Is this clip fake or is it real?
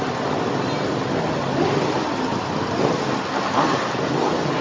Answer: real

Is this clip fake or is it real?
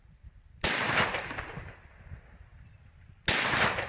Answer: real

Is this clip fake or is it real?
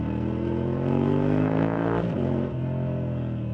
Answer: fake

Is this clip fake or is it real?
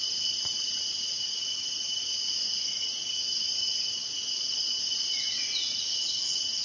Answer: real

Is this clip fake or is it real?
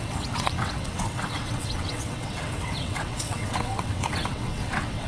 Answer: fake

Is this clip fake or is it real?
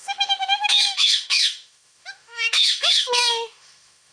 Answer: fake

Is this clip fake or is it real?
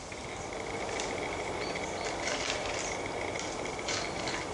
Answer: real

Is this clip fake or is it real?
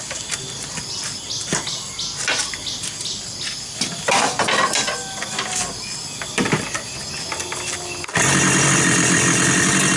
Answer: real